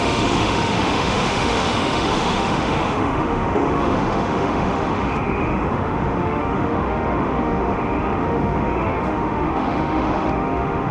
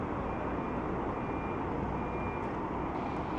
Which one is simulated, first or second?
first